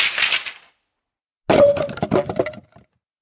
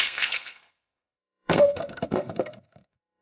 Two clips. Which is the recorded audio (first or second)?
first